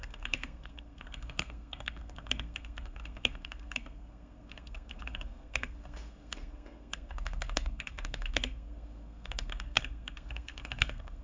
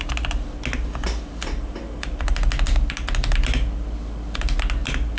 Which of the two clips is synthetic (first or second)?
first